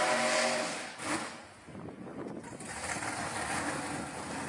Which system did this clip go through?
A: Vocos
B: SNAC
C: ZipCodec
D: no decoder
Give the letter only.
D